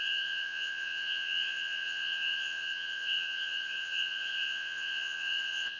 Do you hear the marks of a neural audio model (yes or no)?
yes